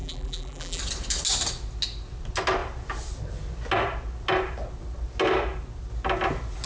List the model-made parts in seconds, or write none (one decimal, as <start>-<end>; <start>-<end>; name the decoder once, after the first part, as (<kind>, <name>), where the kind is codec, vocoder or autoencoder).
0.0-0.8 (vocoder, BigVGAN v2)